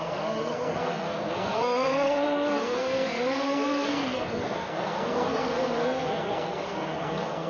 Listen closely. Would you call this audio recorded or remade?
remade